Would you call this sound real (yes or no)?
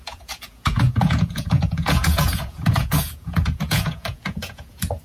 no